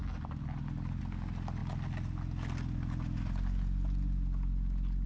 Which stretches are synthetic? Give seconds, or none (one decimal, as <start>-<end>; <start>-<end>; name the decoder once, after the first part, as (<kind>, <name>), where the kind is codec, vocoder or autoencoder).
none